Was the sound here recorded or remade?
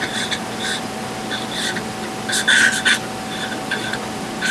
recorded